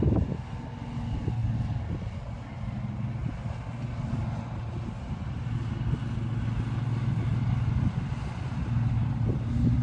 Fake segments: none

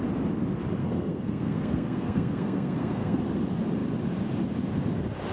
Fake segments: 0.8-3.2 (codec, SNAC)

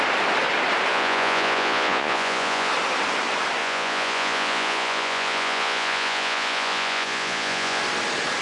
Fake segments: 0.9-2.7 (vocoder, Vocos); 3.6-7.8

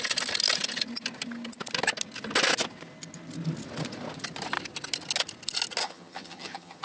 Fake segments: 5.8-6.8 (vocoder, HiFi-GAN)

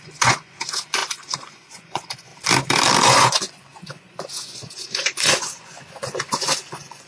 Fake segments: 0.0-2.3 (vocoder, Vocos); 3.0-7.1